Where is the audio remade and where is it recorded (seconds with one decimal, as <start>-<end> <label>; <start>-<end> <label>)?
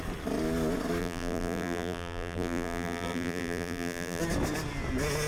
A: 0.0-1.0 recorded; 1.0-4.2 remade; 4.2-5.3 recorded